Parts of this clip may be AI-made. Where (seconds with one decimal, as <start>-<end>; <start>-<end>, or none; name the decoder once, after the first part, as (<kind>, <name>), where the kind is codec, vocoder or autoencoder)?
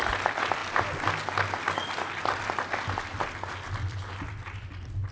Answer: none